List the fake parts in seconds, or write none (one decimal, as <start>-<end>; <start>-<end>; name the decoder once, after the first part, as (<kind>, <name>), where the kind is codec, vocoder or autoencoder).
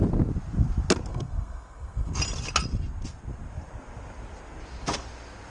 1.1-2.1 (codec, SNAC)